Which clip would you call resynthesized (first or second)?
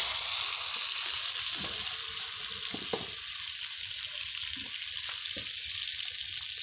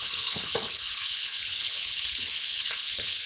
second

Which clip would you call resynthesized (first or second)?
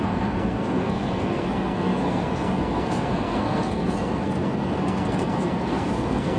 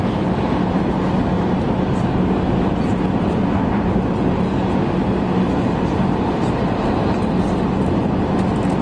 first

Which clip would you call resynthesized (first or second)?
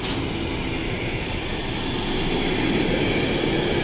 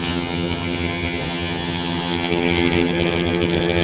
second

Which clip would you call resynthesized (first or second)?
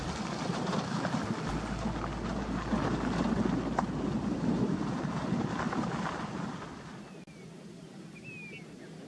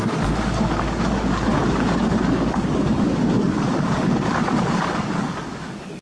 second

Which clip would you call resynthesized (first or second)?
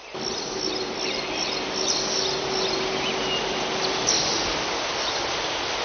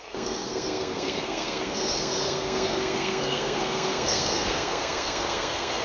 second